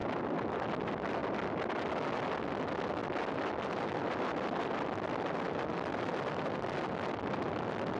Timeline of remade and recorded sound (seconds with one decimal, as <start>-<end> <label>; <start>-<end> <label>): 0.0-1.2 recorded; 1.2-1.9 remade; 1.9-3.0 recorded; 3.0-8.0 remade